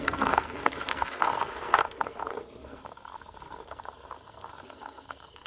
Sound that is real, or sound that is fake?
fake